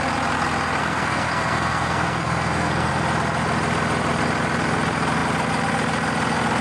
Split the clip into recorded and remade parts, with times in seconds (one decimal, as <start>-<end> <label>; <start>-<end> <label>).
0.0-0.8 recorded; 0.8-2.9 remade; 2.9-6.6 recorded